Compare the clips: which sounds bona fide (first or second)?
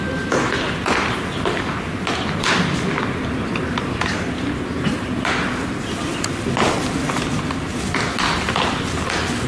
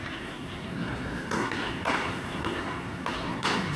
first